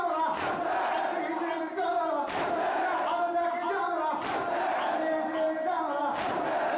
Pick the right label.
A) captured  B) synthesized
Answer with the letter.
A